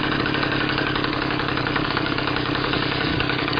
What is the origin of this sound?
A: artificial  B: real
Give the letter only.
A